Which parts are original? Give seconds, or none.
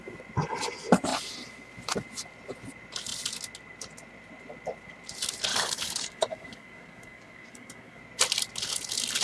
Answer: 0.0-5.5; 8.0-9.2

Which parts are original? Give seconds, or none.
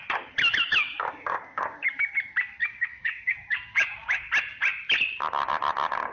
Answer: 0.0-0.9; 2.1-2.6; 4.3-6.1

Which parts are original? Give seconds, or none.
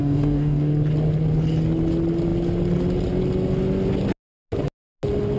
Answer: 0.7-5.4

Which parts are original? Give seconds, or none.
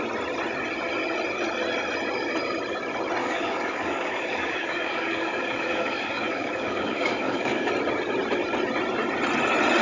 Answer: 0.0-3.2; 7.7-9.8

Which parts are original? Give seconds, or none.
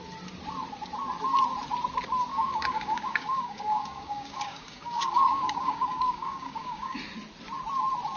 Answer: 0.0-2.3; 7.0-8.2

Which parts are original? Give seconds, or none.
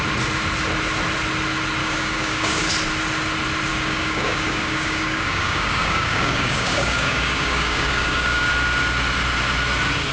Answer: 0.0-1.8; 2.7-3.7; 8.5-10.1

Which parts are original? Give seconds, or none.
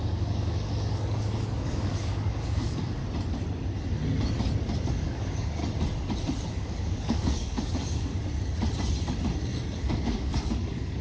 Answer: 3.0-4.9; 5.6-6.5; 8.1-9.8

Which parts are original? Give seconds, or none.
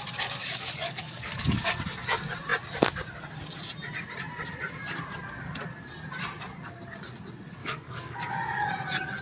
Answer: 0.0-0.4; 1.7-7.6; 8.3-9.2